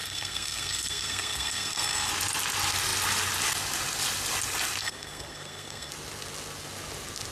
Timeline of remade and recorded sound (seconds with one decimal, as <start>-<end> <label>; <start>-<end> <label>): 0.0-2.1 remade; 2.1-4.8 recorded; 4.8-5.9 remade; 5.9-7.3 recorded